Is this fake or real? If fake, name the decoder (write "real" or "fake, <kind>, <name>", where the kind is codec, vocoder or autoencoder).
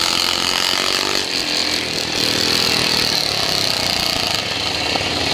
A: real